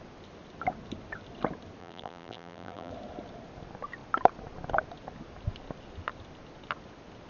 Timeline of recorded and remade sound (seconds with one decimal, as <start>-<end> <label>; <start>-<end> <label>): 0.0-1.8 recorded; 1.8-2.9 remade; 2.9-7.3 recorded